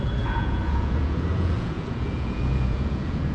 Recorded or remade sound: remade